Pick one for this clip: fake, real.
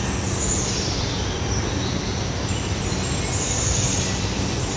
real